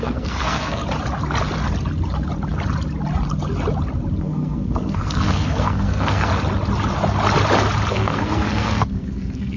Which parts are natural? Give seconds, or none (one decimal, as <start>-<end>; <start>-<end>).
0.8-4.2; 6.3-7.9